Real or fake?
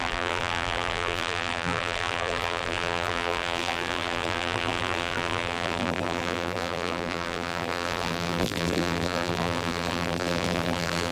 fake